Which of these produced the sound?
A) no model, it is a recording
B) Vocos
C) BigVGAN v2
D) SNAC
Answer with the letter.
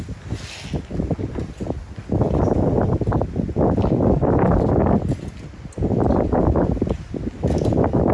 A